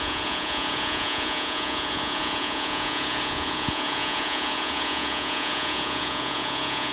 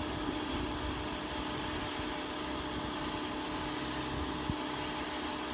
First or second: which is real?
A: second